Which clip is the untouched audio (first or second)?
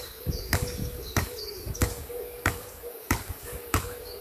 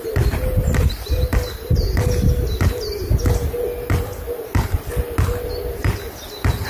second